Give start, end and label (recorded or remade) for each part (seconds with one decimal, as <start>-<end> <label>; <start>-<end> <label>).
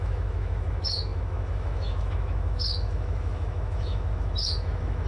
0.0-5.1 remade